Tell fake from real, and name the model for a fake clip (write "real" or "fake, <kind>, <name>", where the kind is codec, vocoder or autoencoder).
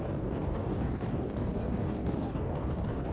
fake, codec, DAC